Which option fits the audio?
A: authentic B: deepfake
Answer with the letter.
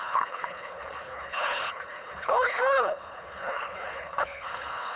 B